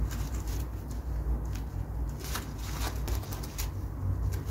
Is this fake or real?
real